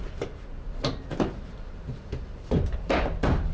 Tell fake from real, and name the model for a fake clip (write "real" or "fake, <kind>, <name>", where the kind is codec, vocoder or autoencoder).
fake, vocoder, BigVGAN v2